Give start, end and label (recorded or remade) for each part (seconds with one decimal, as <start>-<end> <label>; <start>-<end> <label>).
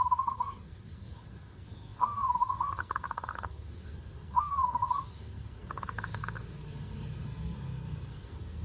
0.0-8.6 remade